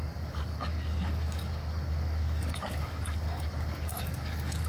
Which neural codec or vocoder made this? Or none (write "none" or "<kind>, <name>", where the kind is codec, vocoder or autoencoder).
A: codec, DAC